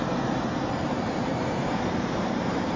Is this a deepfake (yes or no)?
yes